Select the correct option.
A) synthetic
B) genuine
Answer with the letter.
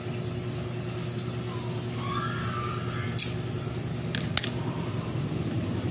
B